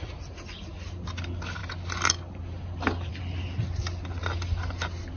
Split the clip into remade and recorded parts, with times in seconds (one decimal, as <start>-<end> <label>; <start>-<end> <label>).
0.0-5.2 recorded